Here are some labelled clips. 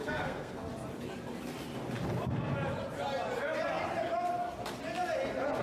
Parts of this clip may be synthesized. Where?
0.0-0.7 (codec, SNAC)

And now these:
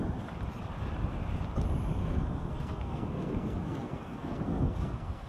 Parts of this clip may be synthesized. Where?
2.0-5.3 (codec, SNAC)

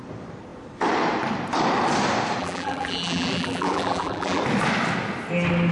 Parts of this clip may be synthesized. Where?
2.4-4.4 (vocoder, BigVGAN v2)